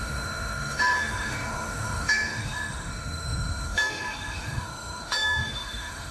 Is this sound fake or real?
fake